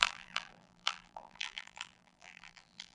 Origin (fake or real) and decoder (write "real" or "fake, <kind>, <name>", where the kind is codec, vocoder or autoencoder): fake, vocoder, BigVGAN v2